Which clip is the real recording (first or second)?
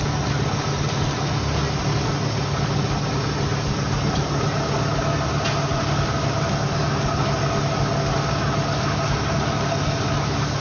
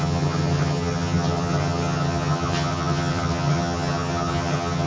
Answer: first